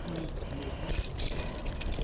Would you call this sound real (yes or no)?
yes